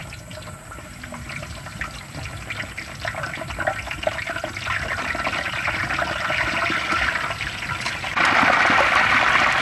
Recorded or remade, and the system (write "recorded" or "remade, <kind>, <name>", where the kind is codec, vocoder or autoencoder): recorded